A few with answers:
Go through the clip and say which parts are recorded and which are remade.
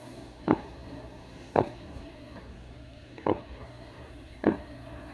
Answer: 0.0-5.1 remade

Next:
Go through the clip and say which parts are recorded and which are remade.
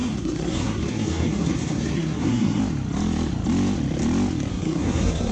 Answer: 0.0-2.6 remade; 2.6-4.5 recorded; 4.5-5.3 remade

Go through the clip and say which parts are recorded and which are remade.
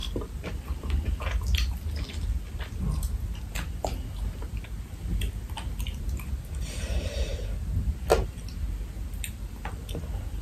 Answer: 0.0-3.4 recorded; 3.4-7.3 remade; 7.3-8.4 recorded; 8.4-10.4 remade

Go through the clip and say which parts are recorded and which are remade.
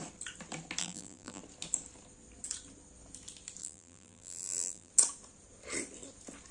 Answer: 0.0-0.8 recorded; 0.8-1.4 remade; 1.4-3.6 recorded; 3.6-4.9 remade; 4.9-6.5 recorded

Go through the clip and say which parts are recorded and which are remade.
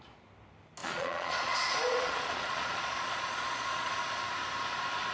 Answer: 0.0-0.8 recorded; 0.8-3.9 remade; 3.9-5.1 recorded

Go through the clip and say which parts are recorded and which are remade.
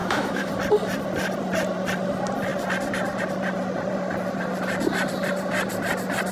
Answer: 0.0-0.5 remade; 0.5-6.3 recorded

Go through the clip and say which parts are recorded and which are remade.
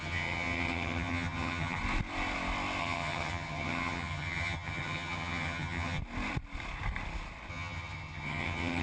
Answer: 0.0-1.8 remade; 1.8-2.8 recorded; 2.8-6.0 remade; 6.0-7.5 recorded; 7.5-8.8 remade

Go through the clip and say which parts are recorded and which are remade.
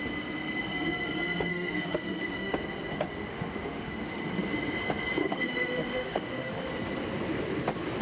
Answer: 0.0-1.5 recorded; 1.5-2.5 remade; 2.5-3.3 recorded; 3.3-4.2 remade; 4.2-5.2 recorded; 5.2-6.7 remade; 6.7-8.0 recorded